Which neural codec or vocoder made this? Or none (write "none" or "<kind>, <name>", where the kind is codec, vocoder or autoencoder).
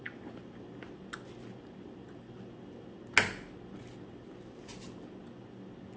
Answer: none